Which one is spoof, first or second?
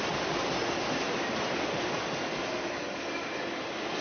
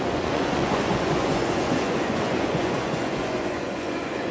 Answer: second